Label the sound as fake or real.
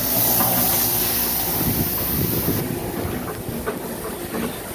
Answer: real